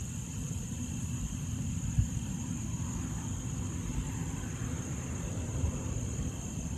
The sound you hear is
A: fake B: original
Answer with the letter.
A